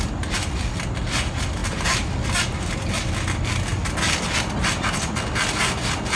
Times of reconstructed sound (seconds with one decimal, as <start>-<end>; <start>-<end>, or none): none